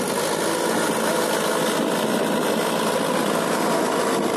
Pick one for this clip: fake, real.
real